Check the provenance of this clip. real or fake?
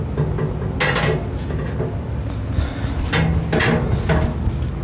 real